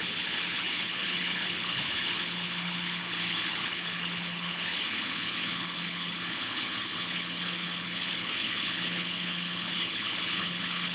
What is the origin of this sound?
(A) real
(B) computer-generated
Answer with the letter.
B